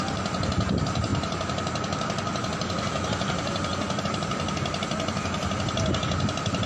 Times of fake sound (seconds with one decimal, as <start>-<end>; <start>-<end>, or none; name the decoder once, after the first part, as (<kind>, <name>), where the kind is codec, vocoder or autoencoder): 1.1-4.0 (vocoder, BigVGAN v2)